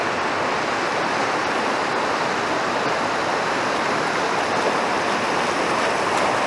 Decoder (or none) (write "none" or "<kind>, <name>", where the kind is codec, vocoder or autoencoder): none